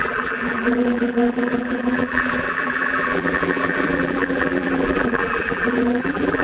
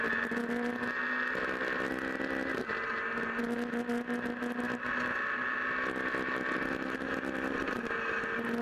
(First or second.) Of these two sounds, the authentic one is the second